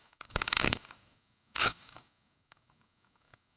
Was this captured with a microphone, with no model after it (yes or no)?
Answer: no